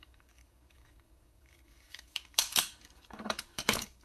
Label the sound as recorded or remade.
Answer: remade